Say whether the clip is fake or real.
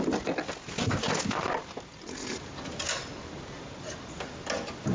real